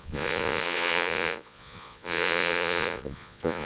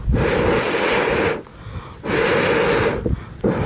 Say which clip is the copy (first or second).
first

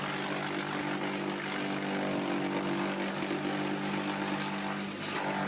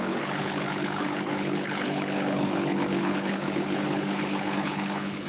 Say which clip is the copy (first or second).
second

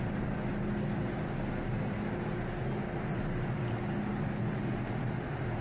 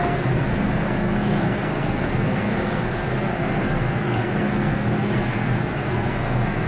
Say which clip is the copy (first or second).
second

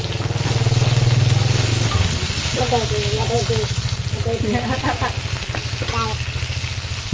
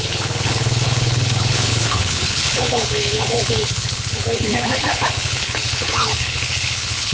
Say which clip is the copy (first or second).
second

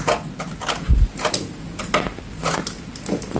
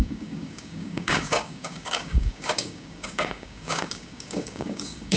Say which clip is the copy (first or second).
second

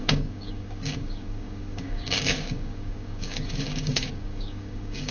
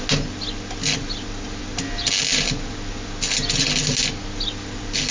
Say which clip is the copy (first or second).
first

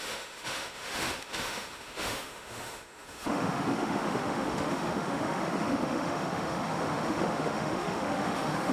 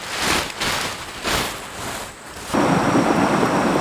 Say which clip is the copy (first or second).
first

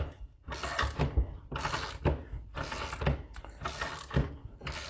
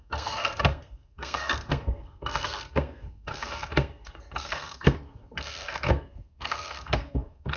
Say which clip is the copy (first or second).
second